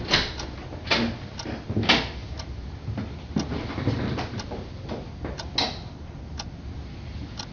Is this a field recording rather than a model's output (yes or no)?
yes